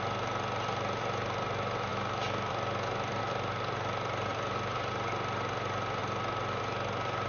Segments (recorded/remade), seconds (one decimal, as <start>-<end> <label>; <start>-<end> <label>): 0.0-1.9 recorded; 1.9-3.2 remade; 3.2-4.3 recorded; 4.3-4.9 remade; 4.9-6.0 recorded; 6.0-6.6 remade; 6.6-7.3 recorded

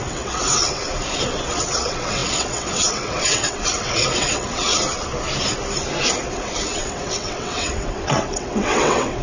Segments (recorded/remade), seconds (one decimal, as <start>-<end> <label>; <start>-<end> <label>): 0.0-0.9 remade; 0.9-1.5 recorded; 1.5-4.7 remade; 4.7-6.3 recorded; 6.3-9.2 remade

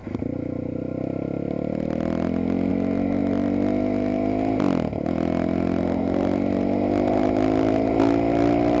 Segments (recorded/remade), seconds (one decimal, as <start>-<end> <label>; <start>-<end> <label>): 0.0-8.8 recorded